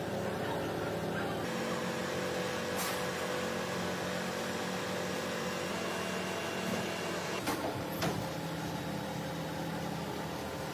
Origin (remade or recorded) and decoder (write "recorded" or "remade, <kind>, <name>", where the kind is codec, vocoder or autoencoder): recorded